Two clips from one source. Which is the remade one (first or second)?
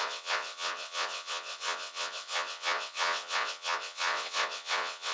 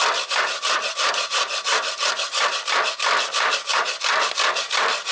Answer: first